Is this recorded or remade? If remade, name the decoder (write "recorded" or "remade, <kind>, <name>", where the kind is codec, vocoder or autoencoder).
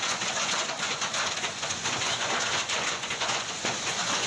remade, vocoder, Vocos